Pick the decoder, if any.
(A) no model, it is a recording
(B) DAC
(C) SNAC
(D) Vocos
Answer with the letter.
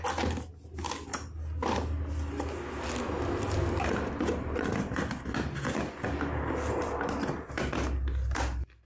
A